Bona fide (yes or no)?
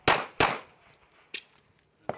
yes